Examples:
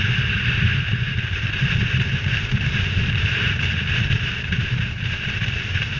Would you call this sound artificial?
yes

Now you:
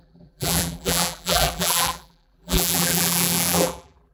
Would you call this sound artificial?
yes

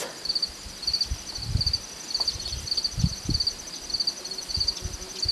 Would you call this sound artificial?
no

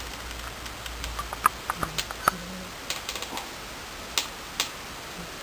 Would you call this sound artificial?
no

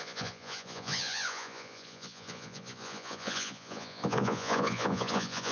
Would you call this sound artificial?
yes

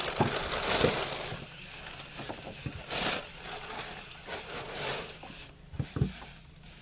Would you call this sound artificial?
no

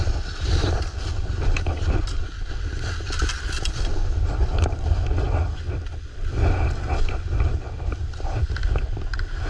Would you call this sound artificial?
no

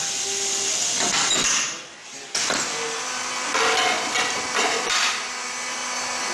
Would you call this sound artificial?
no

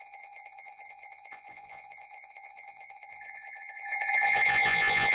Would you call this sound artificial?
yes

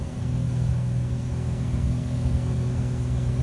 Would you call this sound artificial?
yes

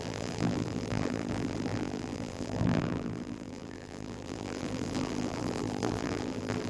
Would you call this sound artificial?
yes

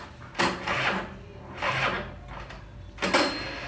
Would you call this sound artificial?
no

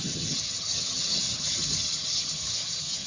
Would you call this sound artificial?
yes